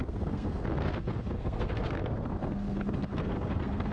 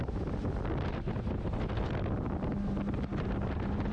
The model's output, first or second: first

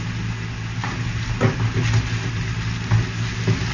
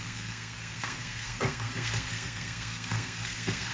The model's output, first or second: second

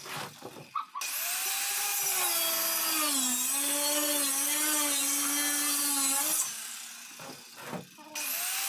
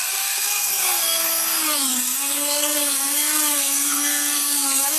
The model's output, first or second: second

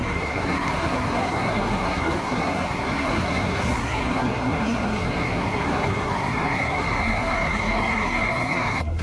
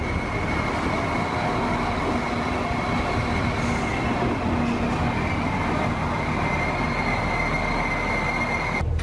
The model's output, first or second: first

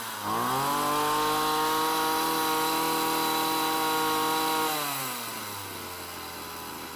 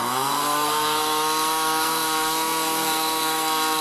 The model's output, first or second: second